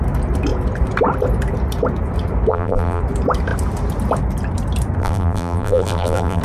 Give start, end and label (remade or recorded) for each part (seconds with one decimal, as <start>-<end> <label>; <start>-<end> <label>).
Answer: 0.0-2.5 recorded; 2.5-3.0 remade; 3.0-5.0 recorded; 5.0-6.4 remade